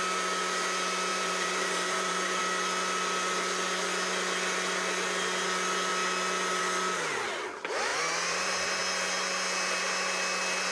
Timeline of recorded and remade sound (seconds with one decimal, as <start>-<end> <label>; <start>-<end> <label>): 0.0-1.1 recorded; 1.1-2.4 remade; 2.4-7.9 recorded; 7.9-8.8 remade; 8.8-10.7 recorded